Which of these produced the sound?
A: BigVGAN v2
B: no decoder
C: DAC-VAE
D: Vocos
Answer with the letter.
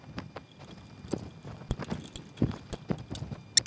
B